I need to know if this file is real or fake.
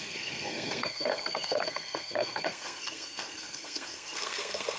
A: fake